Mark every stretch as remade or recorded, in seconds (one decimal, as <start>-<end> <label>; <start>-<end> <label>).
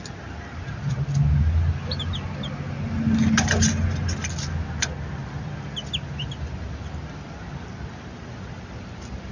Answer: 0.0-9.3 recorded